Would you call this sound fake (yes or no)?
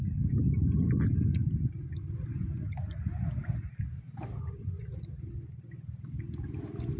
no